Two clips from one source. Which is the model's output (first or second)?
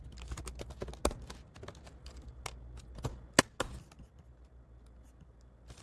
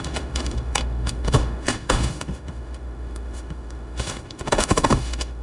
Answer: second